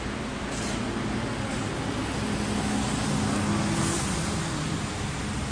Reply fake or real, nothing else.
real